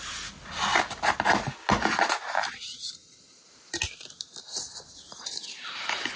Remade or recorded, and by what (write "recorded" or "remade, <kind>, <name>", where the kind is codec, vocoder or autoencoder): recorded